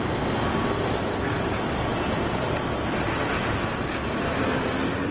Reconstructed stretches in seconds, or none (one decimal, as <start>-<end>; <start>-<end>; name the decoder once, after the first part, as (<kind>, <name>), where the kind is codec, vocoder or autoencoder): 1.9-4.1 (vocoder, BigVGAN v2)